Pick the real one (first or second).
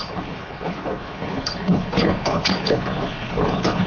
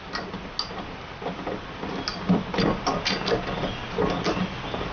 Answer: second